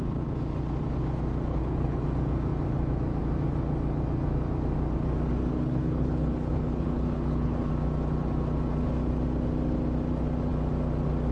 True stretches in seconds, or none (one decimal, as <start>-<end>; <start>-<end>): 0.0-1.5; 2.0-5.5; 7.7-11.3